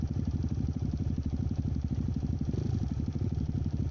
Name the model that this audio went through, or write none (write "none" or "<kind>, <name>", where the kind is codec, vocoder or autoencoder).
none